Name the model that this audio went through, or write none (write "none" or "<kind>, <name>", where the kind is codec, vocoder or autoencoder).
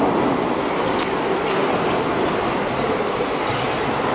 vocoder, BigVGAN v2